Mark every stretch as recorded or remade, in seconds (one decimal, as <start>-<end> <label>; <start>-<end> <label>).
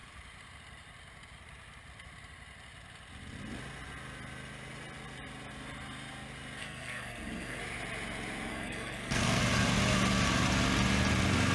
0.0-6.6 recorded; 6.6-7.6 remade; 7.6-8.5 recorded; 8.5-9.4 remade; 9.4-11.5 recorded